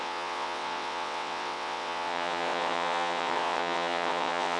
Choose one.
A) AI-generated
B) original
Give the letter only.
A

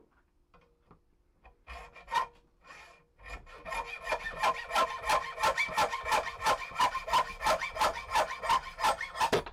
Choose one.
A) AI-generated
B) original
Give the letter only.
B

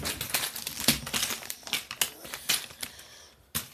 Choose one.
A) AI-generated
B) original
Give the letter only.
B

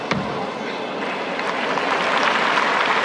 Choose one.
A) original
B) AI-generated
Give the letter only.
A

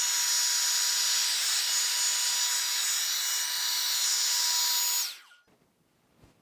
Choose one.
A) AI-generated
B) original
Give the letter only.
B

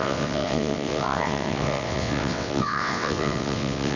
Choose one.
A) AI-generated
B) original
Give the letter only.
A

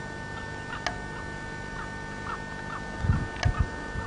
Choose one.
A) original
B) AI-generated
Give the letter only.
A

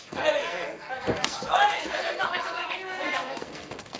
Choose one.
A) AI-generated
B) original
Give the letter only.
A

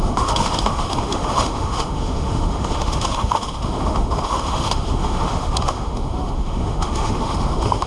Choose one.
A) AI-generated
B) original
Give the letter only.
A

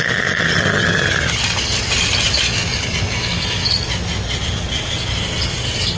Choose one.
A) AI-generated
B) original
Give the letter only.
B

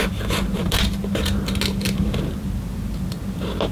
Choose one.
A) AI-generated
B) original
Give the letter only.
B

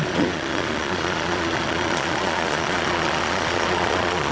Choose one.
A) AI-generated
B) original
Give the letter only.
A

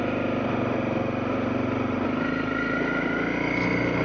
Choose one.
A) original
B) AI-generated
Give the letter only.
A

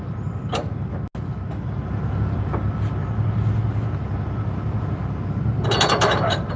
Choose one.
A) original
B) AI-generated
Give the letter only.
A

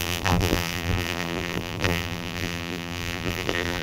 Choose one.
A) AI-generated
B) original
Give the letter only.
A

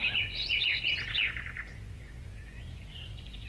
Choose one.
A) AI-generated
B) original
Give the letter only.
A